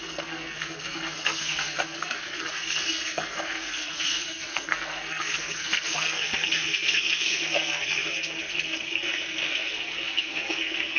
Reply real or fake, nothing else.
fake